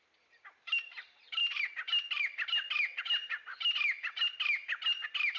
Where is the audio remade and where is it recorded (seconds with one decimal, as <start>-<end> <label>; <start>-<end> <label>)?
0.0-1.4 remade; 1.4-3.0 recorded; 3.0-3.5 remade; 3.5-5.4 recorded